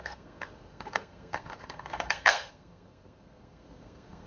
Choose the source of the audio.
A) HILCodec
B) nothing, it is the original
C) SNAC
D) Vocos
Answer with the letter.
C